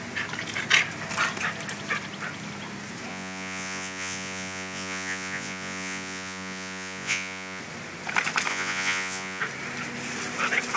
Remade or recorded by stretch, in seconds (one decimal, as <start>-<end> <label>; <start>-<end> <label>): 0.0-3.1 recorded; 3.1-7.6 remade; 7.6-8.5 recorded; 8.5-9.4 remade; 9.4-10.8 recorded

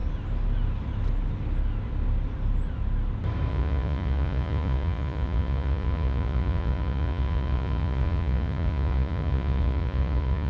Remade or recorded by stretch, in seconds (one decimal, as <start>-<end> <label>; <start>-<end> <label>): 0.0-3.5 recorded; 3.5-10.5 remade

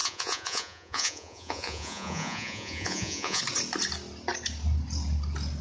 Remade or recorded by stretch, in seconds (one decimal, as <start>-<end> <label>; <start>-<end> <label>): 0.0-3.4 remade; 3.4-5.6 recorded